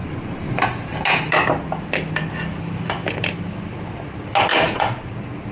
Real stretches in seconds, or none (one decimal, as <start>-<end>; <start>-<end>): 0.6-4.5; 5.1-5.5